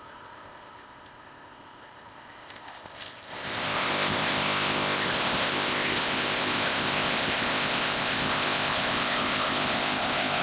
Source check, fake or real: fake